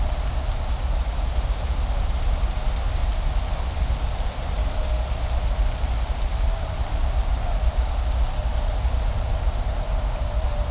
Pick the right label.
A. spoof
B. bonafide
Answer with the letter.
B